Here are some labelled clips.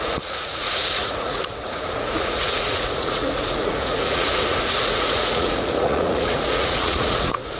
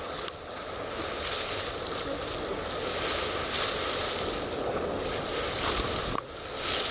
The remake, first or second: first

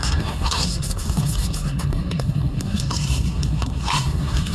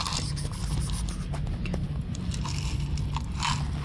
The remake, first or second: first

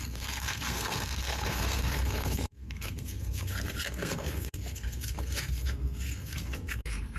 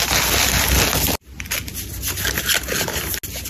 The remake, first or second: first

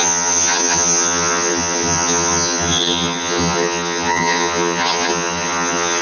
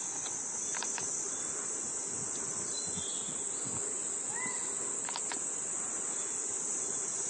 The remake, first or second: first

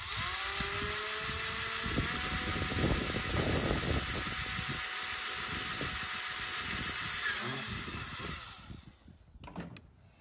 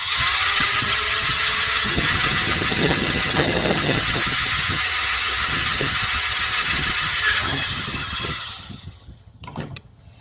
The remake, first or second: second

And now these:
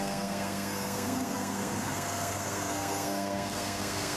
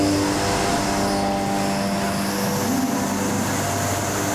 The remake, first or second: first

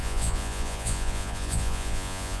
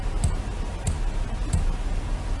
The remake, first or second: first